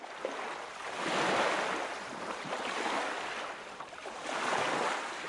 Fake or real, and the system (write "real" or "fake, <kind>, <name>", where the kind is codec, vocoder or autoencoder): real